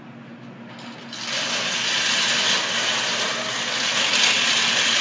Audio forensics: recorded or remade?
recorded